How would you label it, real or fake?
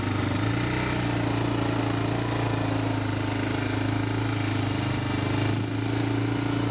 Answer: real